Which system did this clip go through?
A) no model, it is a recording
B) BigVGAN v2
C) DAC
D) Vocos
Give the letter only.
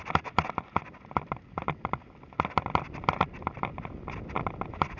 A